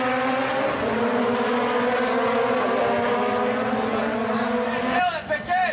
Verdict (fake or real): real